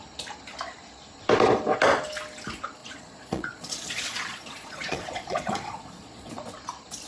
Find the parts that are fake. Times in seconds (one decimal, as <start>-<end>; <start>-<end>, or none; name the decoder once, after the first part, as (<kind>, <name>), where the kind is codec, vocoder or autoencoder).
2.8-6.3 (vocoder, Vocos)

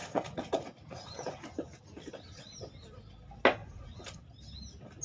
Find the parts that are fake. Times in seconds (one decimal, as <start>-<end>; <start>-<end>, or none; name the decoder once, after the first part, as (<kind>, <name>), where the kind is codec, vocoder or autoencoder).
0.0-1.4 (vocoder, Vocos); 3.6-4.2

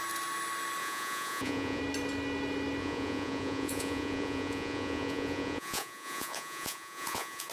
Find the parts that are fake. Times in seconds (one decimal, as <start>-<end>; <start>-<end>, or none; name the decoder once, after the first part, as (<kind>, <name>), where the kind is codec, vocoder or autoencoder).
0.8-1.8 (vocoder, Vocos); 2.8-7.5

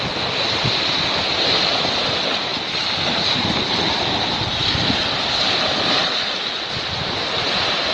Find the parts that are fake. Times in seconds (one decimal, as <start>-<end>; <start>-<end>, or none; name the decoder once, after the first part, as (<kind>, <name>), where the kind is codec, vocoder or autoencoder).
none